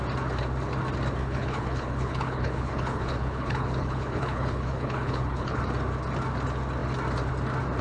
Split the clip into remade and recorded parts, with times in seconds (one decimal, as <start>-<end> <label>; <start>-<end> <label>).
0.0-1.2 recorded; 1.2-5.6 remade; 5.6-7.8 recorded